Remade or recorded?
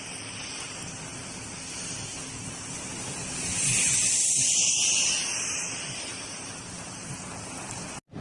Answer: recorded